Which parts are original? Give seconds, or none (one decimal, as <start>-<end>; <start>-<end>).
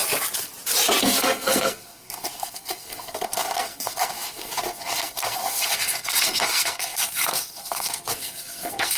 0.0-1.0